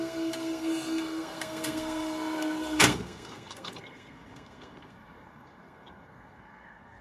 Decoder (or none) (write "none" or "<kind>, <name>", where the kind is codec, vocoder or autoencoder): codec, SNAC